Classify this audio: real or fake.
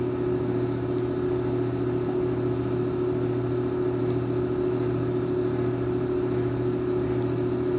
fake